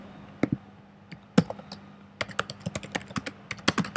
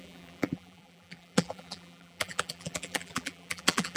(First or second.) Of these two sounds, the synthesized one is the second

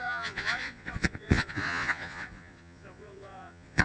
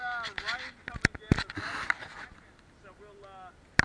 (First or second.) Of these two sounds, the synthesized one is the first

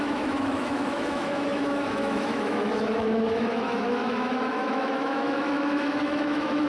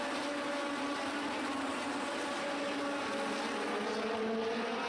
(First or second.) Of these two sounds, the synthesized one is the first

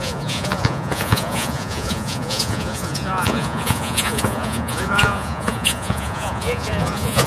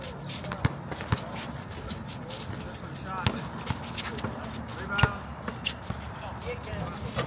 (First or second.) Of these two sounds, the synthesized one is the first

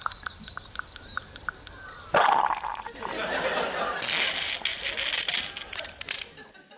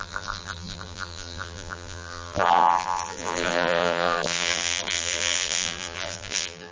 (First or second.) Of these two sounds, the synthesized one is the second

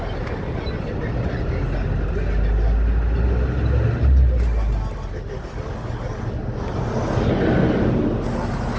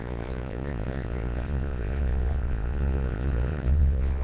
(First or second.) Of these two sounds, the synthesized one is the second